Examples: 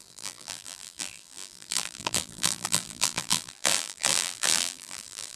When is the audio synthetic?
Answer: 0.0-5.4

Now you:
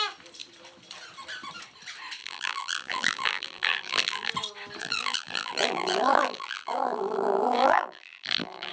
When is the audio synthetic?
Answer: 2.2-4.3; 4.8-8.7

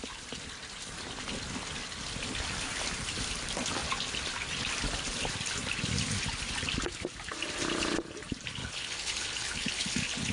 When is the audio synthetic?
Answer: 8.6-10.3

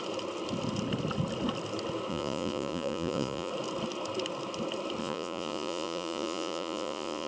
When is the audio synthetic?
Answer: 2.1-3.5; 5.0-7.3

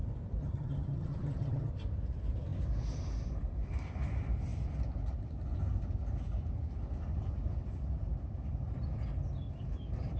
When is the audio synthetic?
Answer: 0.4-1.7

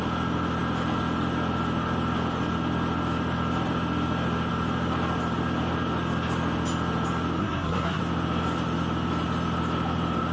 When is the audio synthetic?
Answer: 7.4-8.0

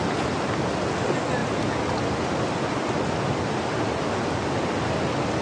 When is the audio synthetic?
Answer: none